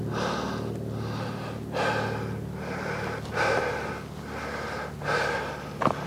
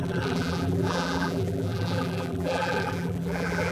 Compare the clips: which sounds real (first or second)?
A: first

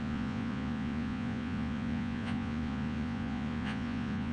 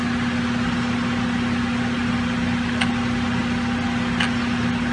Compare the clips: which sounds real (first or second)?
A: second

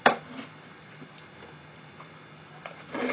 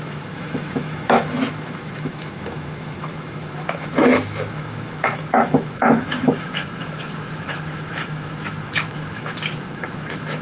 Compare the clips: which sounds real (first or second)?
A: first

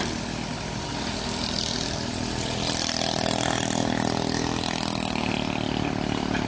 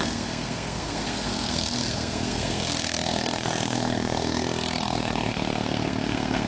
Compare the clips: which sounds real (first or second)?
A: first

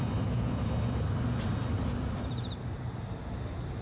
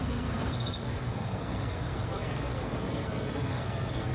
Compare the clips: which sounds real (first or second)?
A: first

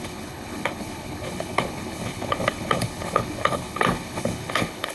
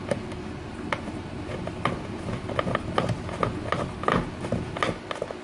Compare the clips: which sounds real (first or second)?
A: second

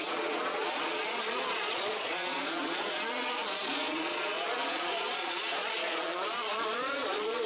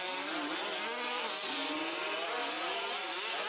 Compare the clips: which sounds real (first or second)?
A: second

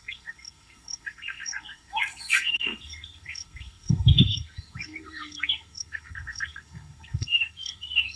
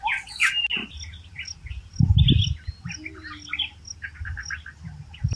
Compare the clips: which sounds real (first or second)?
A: second